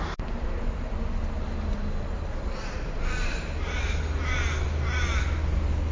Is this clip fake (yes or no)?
no